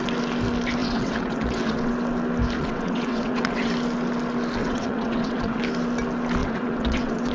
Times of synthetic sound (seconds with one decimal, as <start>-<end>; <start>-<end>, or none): 0.8-1.9; 2.6-3.7; 4.6-5.6; 6.4-7.3

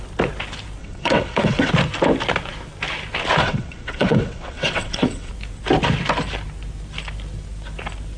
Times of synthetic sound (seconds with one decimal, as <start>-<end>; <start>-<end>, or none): 0.8-1.7; 3.4-5.3

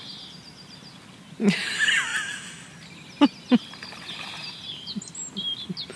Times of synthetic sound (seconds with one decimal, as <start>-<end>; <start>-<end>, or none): none

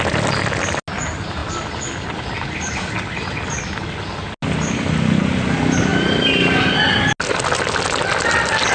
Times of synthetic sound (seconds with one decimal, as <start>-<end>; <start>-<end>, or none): none

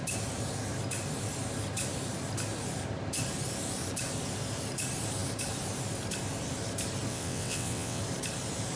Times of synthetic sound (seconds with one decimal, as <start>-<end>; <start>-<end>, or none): 7.1-8.0

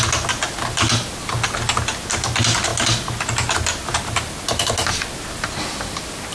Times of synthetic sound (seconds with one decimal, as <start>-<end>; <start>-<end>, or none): none

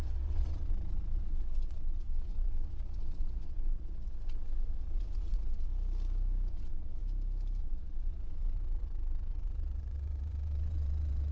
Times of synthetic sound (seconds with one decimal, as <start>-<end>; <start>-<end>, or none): 0.0-5.7; 6.5-7.0; 7.6-11.3